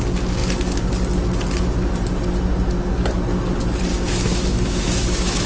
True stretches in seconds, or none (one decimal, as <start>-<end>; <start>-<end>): 0.0-3.9